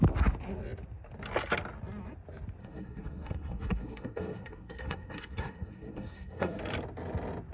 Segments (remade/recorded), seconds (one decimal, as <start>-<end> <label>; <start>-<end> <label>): 0.0-2.6 recorded; 2.6-6.6 remade; 6.6-7.5 recorded

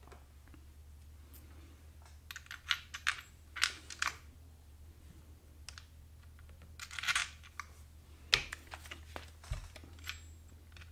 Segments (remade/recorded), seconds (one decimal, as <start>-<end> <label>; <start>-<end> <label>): 0.0-10.9 recorded

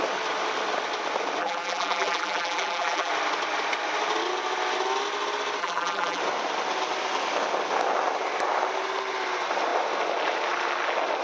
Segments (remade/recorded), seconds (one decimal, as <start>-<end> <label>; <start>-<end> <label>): 0.0-1.4 recorded; 1.4-3.1 remade; 3.1-5.6 recorded; 5.6-6.2 remade; 6.2-11.2 recorded

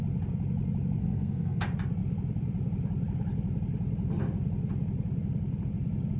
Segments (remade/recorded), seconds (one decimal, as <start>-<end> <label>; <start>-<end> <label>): 0.0-1.0 recorded; 1.0-1.6 remade; 1.6-6.2 recorded